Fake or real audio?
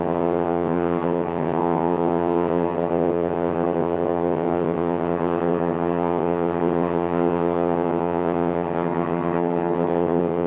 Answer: fake